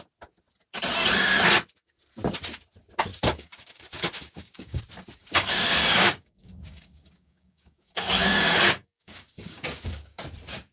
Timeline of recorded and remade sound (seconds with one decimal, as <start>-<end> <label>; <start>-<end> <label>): 0.0-3.1 recorded; 3.1-4.8 remade; 4.8-5.2 recorded; 5.2-10.2 remade; 10.2-10.7 recorded